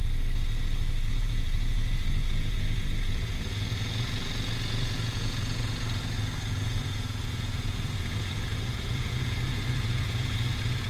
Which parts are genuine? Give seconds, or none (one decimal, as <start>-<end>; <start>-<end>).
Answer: 0.0-1.1